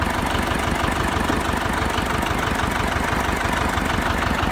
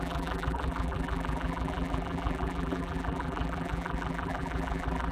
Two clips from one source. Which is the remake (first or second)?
second